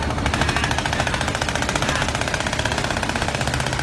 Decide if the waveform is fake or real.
real